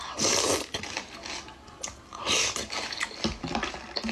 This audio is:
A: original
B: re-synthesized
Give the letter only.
A